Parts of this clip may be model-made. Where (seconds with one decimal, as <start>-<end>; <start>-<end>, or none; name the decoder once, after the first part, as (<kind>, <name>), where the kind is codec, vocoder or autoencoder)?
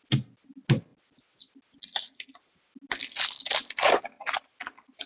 none